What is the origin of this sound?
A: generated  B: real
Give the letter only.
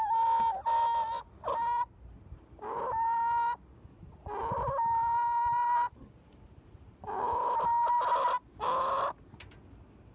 B